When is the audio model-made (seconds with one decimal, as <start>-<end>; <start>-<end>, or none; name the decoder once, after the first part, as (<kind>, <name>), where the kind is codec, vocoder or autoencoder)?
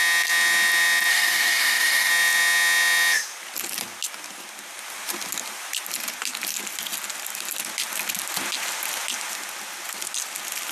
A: 1.1-2.1 (codec, DAC)